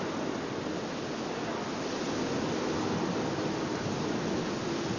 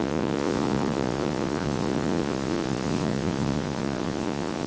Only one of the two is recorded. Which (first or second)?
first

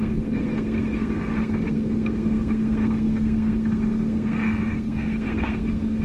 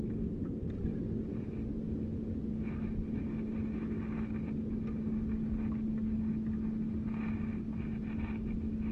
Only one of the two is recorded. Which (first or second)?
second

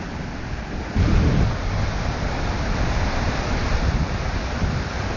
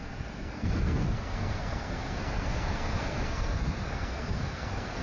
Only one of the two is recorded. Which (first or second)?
first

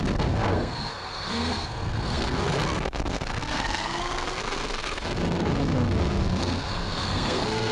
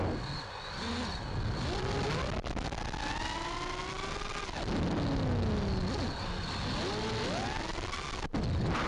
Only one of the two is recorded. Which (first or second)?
second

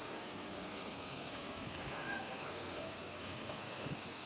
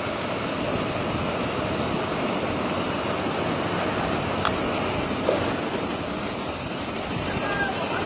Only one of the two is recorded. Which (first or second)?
second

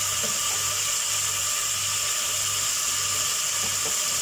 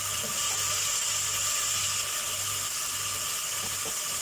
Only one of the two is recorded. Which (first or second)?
second